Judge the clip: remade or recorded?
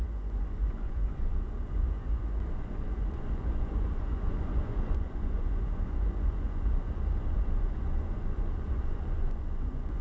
remade